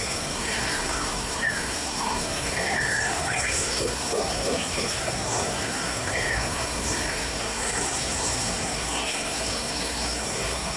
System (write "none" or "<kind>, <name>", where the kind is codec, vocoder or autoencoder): codec, SNAC